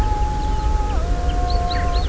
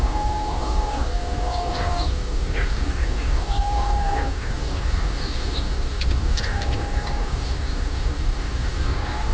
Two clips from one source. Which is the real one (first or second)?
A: first